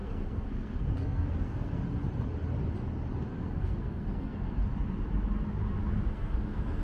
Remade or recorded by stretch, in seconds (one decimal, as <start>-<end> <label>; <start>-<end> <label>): 0.0-1.8 remade; 1.8-3.4 recorded; 3.4-4.6 remade; 4.6-6.1 recorded; 6.1-6.8 remade